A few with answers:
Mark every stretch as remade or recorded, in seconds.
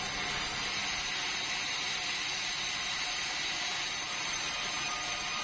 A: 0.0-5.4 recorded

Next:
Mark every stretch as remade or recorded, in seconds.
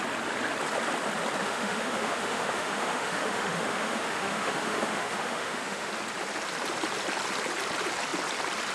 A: 0.0-1.4 recorded; 1.4-5.9 remade; 5.9-8.7 recorded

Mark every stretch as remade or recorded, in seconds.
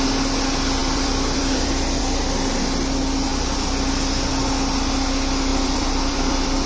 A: 0.0-0.8 recorded; 0.8-2.6 remade; 2.6-3.3 recorded; 3.3-4.3 remade; 4.3-5.5 recorded; 5.5-6.7 remade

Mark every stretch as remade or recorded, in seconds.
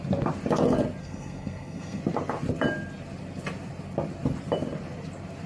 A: 0.0-1.0 recorded; 1.0-2.0 remade; 2.0-5.5 recorded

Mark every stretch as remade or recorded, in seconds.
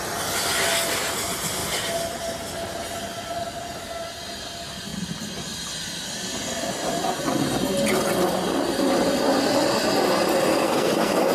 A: 0.0-10.5 recorded; 10.5-11.3 remade